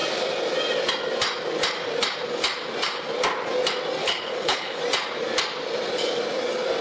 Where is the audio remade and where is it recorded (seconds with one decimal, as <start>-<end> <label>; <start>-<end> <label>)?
0.0-4.0 recorded; 4.0-4.8 remade; 4.8-6.8 recorded